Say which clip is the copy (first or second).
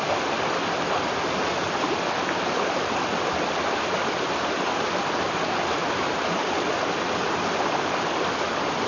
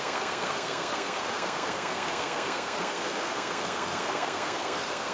second